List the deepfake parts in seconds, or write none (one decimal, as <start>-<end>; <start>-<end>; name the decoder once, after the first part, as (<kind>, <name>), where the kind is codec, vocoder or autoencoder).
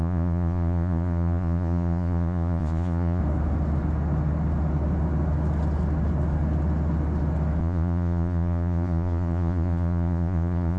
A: 0.0-3.2 (vocoder, Vocos); 7.6-10.8